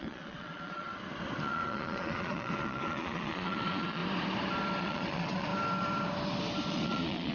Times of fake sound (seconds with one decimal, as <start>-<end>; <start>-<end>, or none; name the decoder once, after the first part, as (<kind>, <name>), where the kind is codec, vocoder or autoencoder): 0.0-0.9 (vocoder, Vocos); 1.4-4.0; 4.8-5.5; 6.7-7.3